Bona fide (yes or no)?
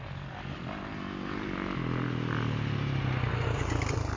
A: yes